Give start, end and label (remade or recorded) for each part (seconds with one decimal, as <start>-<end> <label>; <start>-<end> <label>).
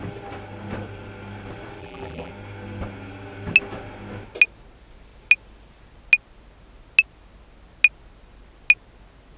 0.0-1.8 recorded; 1.8-2.3 remade; 2.3-9.4 recorded